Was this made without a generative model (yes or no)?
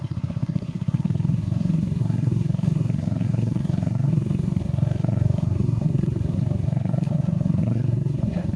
no